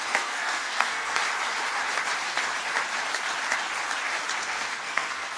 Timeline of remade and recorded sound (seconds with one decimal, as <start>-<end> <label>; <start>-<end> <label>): 0.0-1.2 remade; 1.2-4.4 recorded; 4.4-5.4 remade

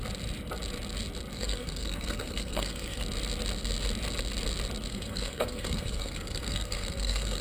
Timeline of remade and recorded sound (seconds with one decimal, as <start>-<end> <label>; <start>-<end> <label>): 0.0-1.3 recorded; 1.3-3.0 remade; 3.0-4.9 recorded; 4.9-7.4 remade